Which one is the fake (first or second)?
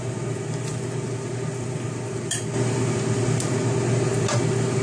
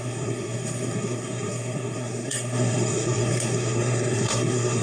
second